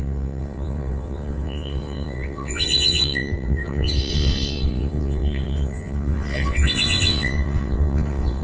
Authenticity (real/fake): fake